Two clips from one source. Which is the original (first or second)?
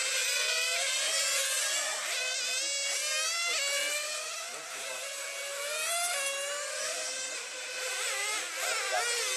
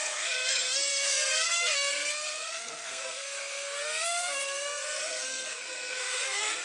first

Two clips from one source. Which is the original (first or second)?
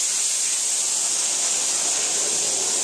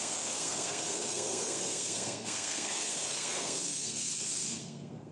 first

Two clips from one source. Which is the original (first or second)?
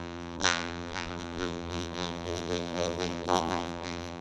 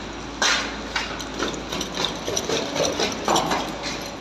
second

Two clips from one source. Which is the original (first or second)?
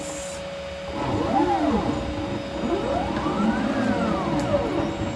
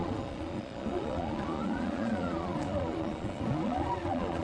first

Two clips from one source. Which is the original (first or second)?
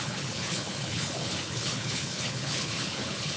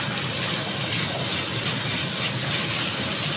second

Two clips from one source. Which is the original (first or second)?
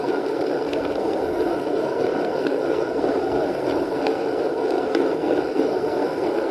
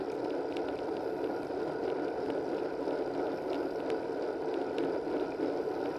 second